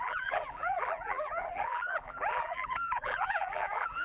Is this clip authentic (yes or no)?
no